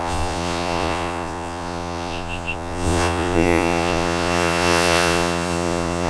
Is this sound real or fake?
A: fake